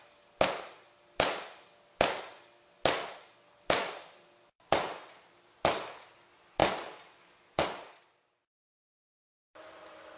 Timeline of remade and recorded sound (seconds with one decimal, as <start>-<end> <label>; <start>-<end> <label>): 0.0-3.8 recorded; 3.8-5.2 remade; 5.2-6.6 recorded; 6.6-10.2 remade